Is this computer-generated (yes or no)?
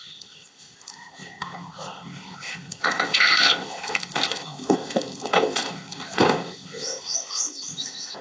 yes